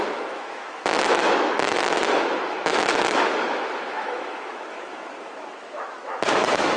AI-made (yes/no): yes